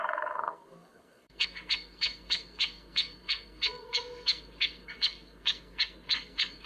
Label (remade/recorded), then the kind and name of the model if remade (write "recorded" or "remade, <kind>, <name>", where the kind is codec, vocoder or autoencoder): remade, codec, SNAC